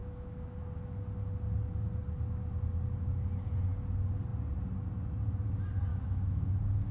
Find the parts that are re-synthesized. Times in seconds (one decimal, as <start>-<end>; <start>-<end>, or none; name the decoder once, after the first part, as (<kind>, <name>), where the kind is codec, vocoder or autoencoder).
0.0-0.6 (autoencoder, DAC-VAE); 5.9-6.5